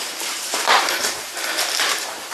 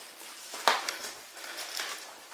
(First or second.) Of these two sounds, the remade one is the first